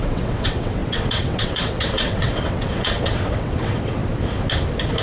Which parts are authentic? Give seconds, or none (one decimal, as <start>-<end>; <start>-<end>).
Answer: 4.0-5.0